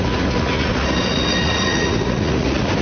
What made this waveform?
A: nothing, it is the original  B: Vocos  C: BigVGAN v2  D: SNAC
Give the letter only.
B